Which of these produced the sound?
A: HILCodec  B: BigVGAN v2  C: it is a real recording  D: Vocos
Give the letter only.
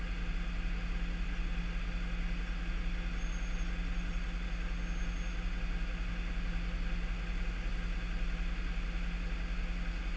C